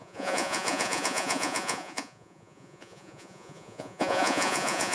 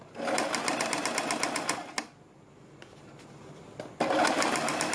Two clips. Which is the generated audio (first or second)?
first